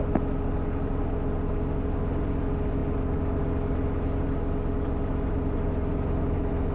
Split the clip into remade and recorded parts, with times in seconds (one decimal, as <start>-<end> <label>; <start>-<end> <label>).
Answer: 0.0-6.7 recorded